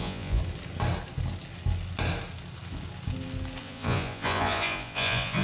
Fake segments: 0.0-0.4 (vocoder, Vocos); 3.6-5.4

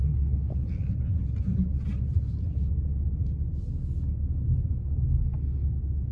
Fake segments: 0.0-0.7 (codec, HILCodec)

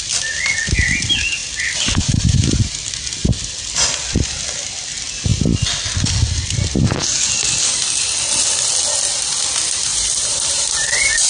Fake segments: 9.9-11.3 (vocoder, BigVGAN v2)

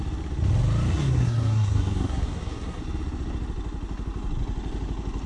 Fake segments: 0.9-2.8 (codec, SNAC)

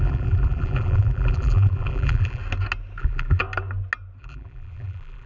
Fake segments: 0.0-2.4 (vocoder, BigVGAN v2); 3.0-3.4; 4.2-5.3